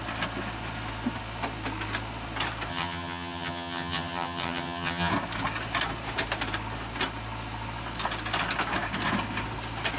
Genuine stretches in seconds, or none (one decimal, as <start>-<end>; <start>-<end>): 0.0-2.7; 5.1-10.0